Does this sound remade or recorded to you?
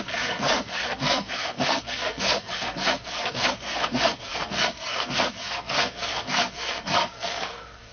remade